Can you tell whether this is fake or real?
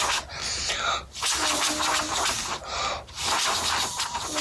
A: real